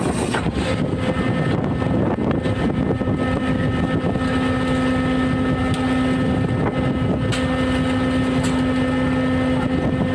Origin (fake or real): real